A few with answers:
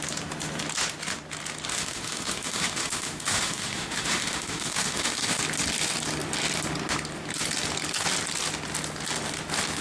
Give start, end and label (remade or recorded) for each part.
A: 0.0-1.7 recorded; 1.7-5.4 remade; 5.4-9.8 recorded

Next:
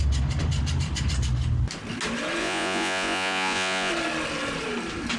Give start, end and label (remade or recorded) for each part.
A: 0.0-2.4 recorded; 2.4-3.9 remade; 3.9-5.2 recorded

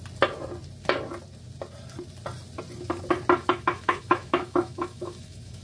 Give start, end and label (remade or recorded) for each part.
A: 0.0-3.4 recorded; 3.4-5.6 remade

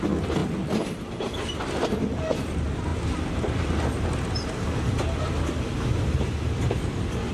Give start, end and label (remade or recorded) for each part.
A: 0.0-7.3 recorded

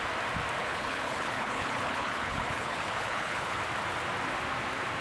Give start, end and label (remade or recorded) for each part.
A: 0.0-0.6 recorded; 0.6-3.6 remade; 3.6-5.0 recorded